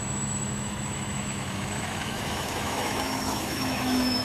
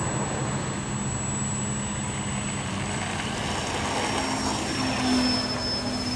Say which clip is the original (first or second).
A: second